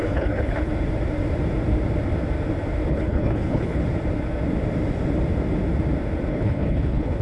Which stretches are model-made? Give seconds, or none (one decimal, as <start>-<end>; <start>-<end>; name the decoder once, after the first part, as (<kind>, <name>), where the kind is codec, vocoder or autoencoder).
0.0-0.7 (codec, HILCodec); 2.9-3.8; 6.3-7.2